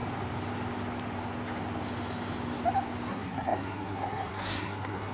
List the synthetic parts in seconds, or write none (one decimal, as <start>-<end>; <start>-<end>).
3.1-5.1